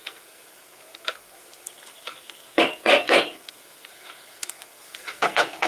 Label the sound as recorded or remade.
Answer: remade